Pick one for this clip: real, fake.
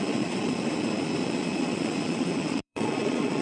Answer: fake